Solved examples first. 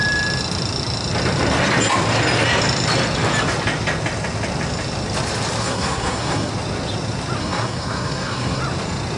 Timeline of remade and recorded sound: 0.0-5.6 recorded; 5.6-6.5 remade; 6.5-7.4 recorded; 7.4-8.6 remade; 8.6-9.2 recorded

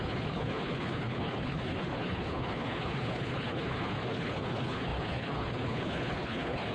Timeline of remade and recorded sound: 0.0-6.7 remade

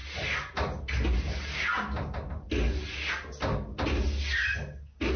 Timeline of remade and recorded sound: 0.0-5.2 recorded

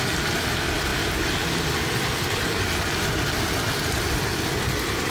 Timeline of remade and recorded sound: 0.0-5.1 recorded

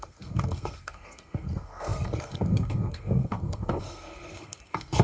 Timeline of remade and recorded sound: 0.0-5.0 remade

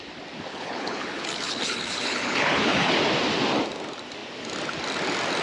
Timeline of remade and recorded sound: 0.0-0.5 recorded; 0.5-3.0 remade; 3.0-5.4 recorded